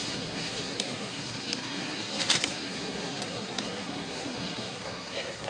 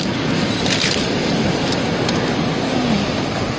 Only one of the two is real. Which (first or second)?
second